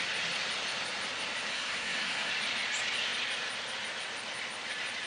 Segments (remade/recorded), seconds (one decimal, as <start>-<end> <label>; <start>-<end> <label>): 0.0-1.5 recorded; 1.5-2.3 remade; 2.3-5.1 recorded